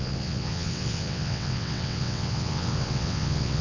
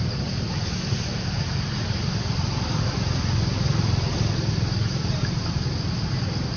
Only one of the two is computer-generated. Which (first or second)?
first